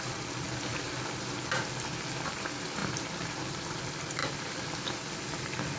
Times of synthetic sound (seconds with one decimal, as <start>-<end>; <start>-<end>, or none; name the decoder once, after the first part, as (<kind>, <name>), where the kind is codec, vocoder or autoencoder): none